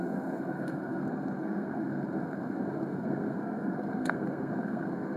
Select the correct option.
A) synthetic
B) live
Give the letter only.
A